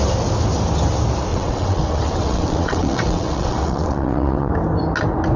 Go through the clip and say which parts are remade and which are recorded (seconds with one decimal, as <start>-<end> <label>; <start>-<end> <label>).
0.0-1.3 recorded; 1.3-4.5 remade; 4.5-5.4 recorded